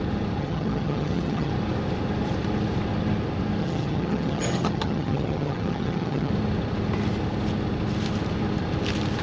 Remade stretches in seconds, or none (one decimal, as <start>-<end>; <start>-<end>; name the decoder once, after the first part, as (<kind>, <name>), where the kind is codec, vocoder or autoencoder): 0.4-1.5 (vocoder, HiFi-GAN); 3.6-6.3